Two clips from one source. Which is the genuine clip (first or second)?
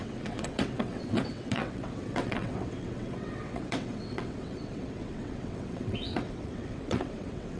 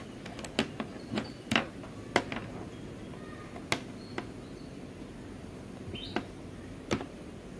second